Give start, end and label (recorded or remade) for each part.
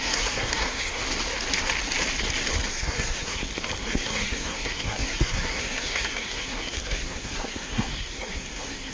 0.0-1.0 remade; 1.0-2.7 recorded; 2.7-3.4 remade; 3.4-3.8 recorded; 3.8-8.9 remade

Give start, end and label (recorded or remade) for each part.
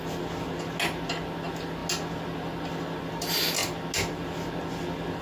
0.0-5.2 recorded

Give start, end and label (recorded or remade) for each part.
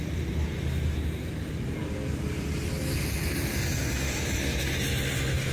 0.0-5.5 recorded